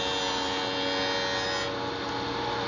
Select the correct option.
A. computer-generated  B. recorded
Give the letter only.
B